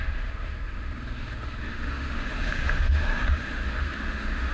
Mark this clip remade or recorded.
remade